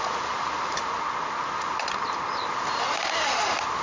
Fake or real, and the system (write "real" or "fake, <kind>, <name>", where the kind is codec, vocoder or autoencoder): real